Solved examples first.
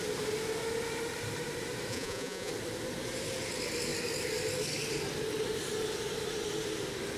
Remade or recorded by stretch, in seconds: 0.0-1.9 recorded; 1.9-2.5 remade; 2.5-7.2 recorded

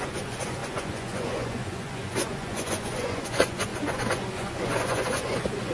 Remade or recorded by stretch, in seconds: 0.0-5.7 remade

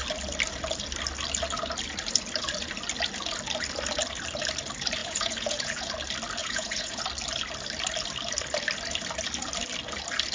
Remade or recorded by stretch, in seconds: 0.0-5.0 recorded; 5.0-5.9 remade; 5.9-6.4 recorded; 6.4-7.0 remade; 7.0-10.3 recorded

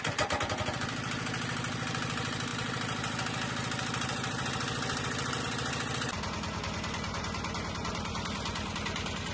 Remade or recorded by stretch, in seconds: 0.0-9.3 recorded

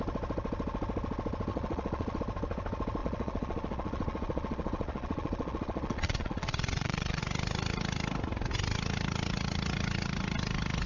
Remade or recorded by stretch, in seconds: 0.0-1.5 recorded; 1.5-2.2 remade; 2.2-3.0 recorded; 3.0-7.2 remade; 7.2-10.9 recorded

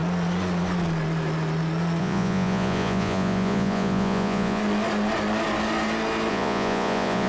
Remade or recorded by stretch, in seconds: 0.0-2.0 recorded; 2.0-4.6 remade; 4.6-6.3 recorded; 6.3-7.3 remade

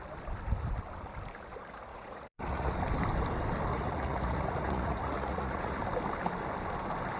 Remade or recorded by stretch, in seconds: 0.0-1.9 recorded; 1.9-2.7 remade; 2.7-3.7 recorded; 3.7-5.8 remade; 5.8-7.2 recorded

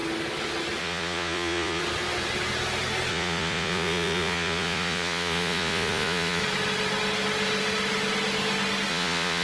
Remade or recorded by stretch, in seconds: 0.0-0.8 recorded; 0.8-1.8 remade; 1.8-3.1 recorded; 3.1-6.4 remade; 6.4-8.9 recorded; 8.9-9.4 remade